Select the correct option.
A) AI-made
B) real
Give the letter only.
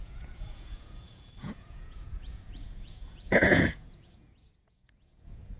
A